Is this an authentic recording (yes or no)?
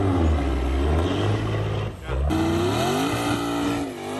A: yes